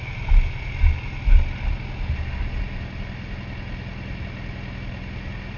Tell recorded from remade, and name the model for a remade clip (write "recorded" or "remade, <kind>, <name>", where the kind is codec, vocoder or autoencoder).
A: recorded